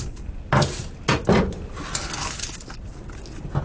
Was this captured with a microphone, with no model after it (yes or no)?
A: yes